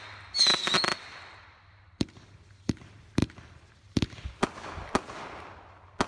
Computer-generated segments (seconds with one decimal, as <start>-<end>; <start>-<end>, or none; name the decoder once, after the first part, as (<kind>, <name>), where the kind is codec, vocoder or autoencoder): 0.9-2.8 (vocoder, BigVGAN v2)